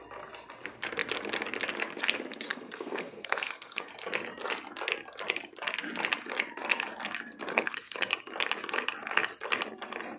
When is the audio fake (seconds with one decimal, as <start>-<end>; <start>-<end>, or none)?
2.5-3.9; 7.5-8.1